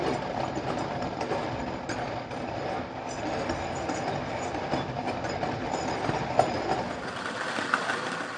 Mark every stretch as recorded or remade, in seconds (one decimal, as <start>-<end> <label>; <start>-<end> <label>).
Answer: 0.0-8.4 recorded